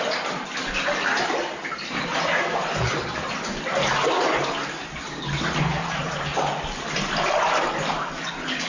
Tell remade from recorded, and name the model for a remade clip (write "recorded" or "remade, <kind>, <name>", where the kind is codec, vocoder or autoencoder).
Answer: recorded